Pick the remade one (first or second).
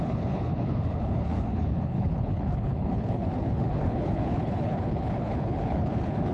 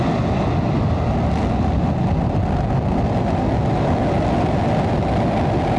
first